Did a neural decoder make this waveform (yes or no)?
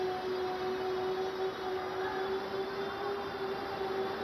no